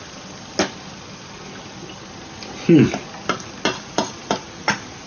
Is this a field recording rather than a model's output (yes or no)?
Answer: yes